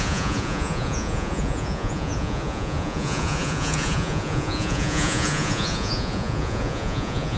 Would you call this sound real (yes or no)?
no